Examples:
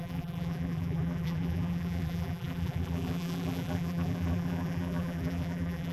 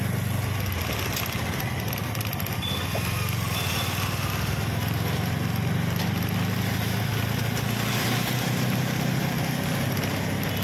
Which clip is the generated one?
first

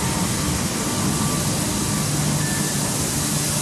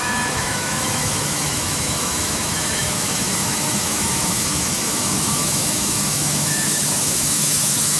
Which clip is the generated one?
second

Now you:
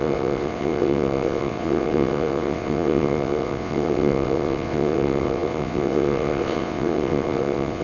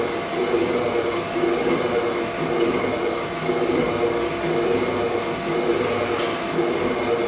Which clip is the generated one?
first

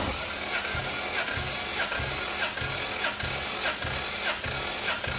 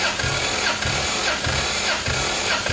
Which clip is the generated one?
second